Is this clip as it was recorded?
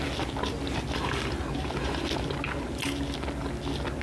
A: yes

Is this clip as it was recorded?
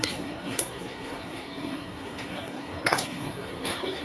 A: no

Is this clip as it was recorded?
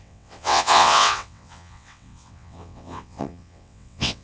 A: no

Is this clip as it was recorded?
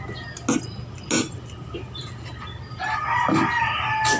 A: yes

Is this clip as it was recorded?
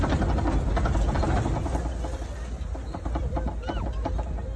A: yes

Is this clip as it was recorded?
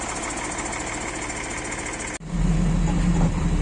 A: yes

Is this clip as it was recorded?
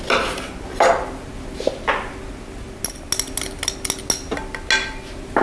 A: yes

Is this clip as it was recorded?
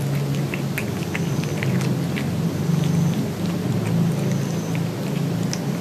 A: yes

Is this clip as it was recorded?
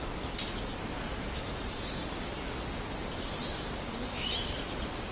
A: yes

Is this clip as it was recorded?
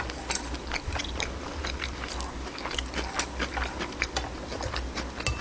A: yes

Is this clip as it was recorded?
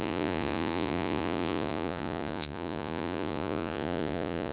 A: no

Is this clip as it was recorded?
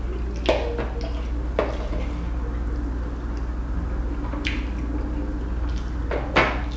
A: yes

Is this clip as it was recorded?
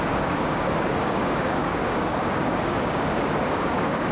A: no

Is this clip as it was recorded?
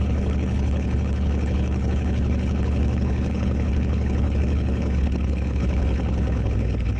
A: no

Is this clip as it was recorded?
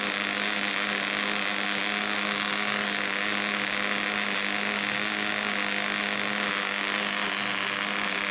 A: yes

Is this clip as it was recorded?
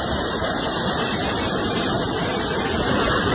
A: yes